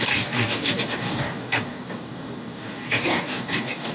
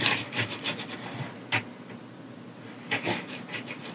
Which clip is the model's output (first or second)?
first